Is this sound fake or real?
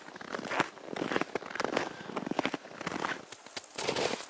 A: real